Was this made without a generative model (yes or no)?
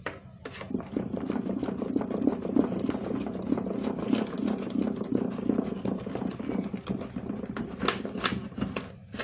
yes